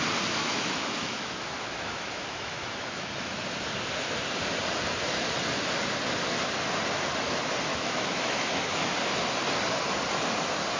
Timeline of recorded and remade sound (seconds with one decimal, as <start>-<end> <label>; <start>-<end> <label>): 0.0-0.4 recorded; 0.4-3.4 remade; 3.4-7.7 recorded; 7.7-8.9 remade; 8.9-10.8 recorded